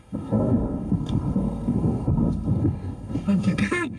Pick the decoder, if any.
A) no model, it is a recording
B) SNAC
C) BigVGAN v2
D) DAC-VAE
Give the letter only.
B